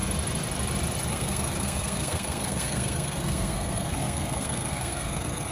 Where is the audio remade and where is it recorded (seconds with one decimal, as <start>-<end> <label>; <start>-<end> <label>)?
0.0-1.1 recorded; 1.1-5.5 remade